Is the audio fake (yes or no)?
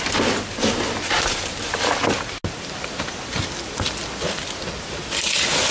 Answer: no